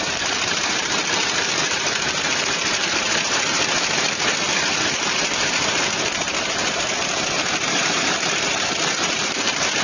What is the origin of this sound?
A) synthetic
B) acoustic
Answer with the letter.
A